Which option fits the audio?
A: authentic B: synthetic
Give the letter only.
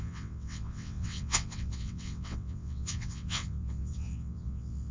B